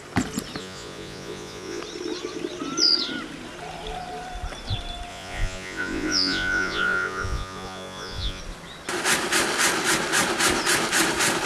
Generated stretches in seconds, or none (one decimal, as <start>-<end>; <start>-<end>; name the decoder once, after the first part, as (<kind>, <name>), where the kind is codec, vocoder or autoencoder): 0.6-1.8 (vocoder, Vocos); 5.1-8.4